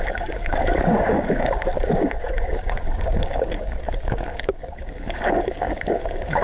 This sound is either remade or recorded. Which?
remade